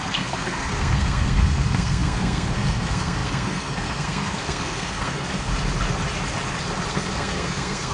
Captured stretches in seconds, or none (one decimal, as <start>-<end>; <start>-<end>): 5.5-6.9